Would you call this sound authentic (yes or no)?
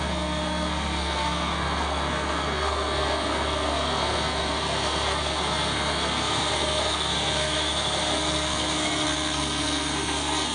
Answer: no